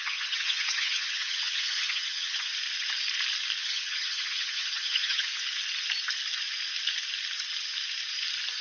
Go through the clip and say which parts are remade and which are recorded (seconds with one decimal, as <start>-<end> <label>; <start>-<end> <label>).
0.0-2.5 remade; 2.5-3.6 recorded; 3.6-5.3 remade; 5.3-8.6 recorded